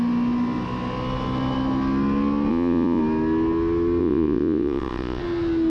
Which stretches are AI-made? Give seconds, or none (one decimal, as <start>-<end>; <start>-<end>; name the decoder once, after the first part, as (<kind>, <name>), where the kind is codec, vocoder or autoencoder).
2.5-3.0 (vocoder, Vocos); 4.0-5.2